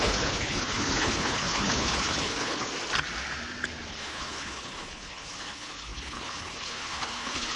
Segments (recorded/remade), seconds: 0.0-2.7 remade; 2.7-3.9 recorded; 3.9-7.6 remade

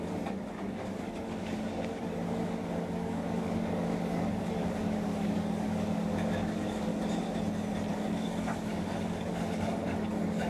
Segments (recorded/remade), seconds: 0.0-6.9 remade; 6.9-7.9 recorded; 7.9-10.5 remade

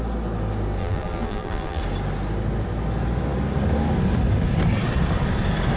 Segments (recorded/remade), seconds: 0.0-0.8 recorded; 0.8-1.8 remade; 1.8-5.8 recorded

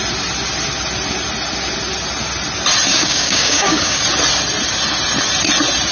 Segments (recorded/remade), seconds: 0.0-2.9 recorded; 2.9-4.0 remade; 4.0-5.9 recorded

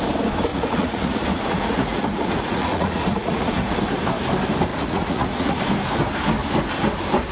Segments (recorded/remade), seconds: 0.0-0.5 recorded; 0.5-3.8 remade; 3.8-4.7 recorded; 4.7-5.6 remade; 5.6-7.3 recorded

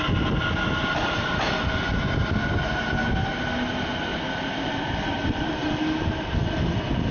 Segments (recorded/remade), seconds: 0.0-4.1 recorded; 4.1-4.7 remade; 4.7-5.2 recorded; 5.2-6.3 remade; 6.3-7.1 recorded

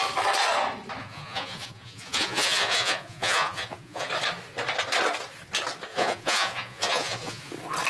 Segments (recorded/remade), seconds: 0.0-1.0 recorded; 1.0-4.1 remade; 4.1-5.9 recorded; 5.9-7.5 remade; 7.5-7.9 recorded

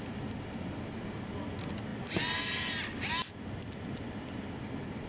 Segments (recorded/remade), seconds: 0.0-5.1 recorded